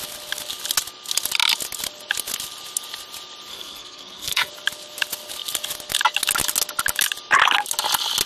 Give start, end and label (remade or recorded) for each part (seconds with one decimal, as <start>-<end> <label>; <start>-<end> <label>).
0.0-3.5 recorded; 3.5-4.5 remade; 4.5-8.3 recorded